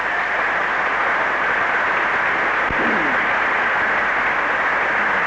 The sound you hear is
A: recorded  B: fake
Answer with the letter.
A